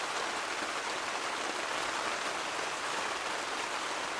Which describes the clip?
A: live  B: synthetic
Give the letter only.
A